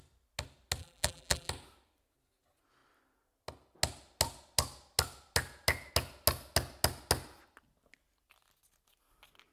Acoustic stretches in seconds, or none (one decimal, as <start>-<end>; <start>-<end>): 0.0-0.8; 1.5-9.5